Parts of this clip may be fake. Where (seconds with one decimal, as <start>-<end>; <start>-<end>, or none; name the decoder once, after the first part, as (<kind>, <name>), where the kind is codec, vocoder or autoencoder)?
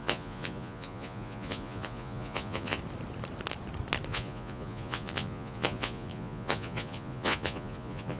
0.0-2.8 (vocoder, Vocos); 4.1-8.2